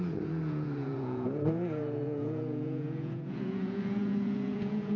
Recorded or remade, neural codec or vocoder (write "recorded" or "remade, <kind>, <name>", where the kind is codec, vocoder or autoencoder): remade, vocoder, Vocos